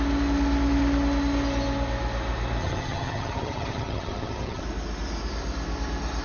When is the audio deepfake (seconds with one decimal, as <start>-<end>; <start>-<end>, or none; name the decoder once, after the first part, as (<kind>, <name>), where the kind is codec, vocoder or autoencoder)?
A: 2.6-4.6 (vocoder, HiFi-GAN)